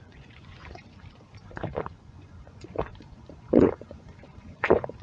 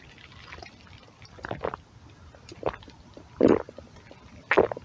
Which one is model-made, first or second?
first